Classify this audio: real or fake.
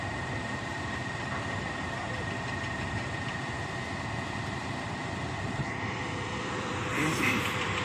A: fake